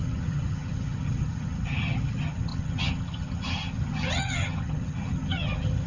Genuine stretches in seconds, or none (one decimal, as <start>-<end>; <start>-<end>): none